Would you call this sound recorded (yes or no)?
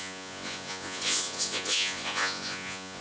no